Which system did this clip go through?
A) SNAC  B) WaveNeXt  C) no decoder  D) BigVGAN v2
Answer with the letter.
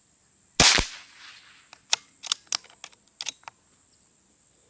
C